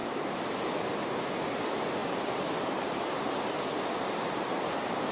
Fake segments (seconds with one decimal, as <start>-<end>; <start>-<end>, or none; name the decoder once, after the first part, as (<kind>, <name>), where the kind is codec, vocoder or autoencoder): none